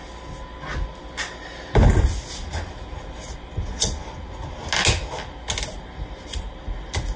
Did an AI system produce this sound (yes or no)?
no